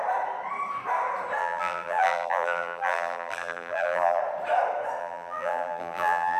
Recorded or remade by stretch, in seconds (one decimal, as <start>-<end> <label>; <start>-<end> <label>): 0.0-1.4 recorded; 1.4-4.2 remade; 4.2-5.0 recorded; 5.0-6.4 remade